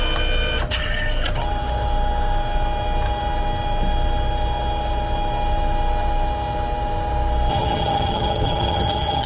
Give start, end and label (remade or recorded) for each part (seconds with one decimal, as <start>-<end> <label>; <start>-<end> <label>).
0.0-7.5 recorded; 7.5-9.3 remade